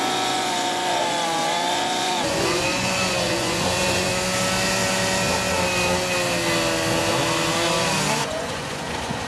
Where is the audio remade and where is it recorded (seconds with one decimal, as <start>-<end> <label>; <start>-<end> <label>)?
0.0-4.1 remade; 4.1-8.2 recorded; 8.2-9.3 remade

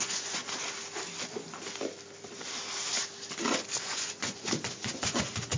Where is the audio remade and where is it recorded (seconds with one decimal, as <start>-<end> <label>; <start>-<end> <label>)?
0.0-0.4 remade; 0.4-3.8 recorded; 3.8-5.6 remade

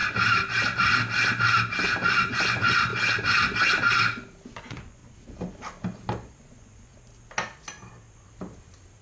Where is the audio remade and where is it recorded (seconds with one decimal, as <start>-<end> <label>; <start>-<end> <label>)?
0.0-2.2 recorded; 2.2-2.9 remade; 2.9-4.6 recorded; 4.6-5.0 remade; 5.0-6.4 recorded; 6.4-6.9 remade; 6.9-9.0 recorded

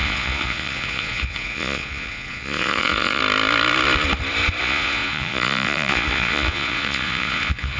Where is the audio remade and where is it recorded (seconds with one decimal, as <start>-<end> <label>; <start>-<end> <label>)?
0.0-3.2 remade; 3.2-4.6 recorded; 4.6-7.8 remade